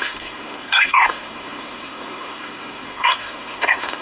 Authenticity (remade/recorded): remade